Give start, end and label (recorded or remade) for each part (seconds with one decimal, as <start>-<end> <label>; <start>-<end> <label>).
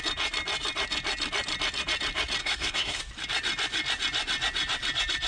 0.0-2.4 recorded; 2.4-3.0 remade; 3.0-5.3 recorded